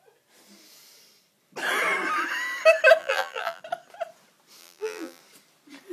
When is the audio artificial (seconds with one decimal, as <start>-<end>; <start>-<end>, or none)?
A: 3.0-3.6; 4.6-5.2